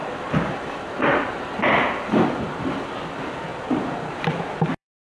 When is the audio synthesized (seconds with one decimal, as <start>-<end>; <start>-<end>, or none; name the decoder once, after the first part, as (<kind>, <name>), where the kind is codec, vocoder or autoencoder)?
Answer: 0.0-1.3 (vocoder, BigVGAN v2); 1.8-2.6; 3.5-5.0